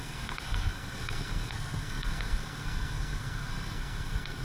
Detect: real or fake fake